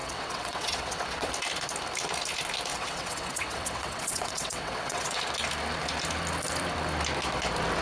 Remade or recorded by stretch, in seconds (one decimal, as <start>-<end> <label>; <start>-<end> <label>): 0.0-1.3 remade; 1.3-2.7 recorded; 2.7-5.2 remade; 5.2-7.8 recorded